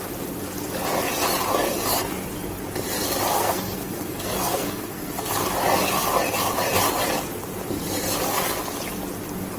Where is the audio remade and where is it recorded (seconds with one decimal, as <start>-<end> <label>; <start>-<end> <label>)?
0.0-3.4 recorded; 3.4-5.3 remade; 5.3-9.6 recorded